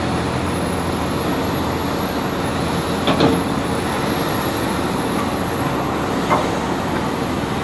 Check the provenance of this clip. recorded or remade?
recorded